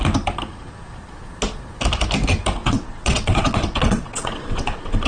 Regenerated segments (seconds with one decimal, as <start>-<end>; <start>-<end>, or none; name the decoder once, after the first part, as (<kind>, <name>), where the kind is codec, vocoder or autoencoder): 2.6-5.1 (vocoder, WaveNeXt)